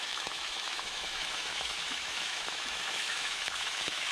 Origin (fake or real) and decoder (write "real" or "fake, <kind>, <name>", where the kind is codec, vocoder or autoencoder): fake, autoencoder, DAC-VAE